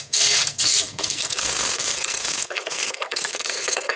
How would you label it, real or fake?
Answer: fake